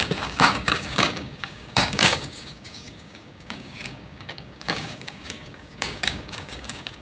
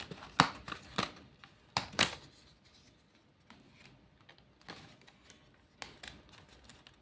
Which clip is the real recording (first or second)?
second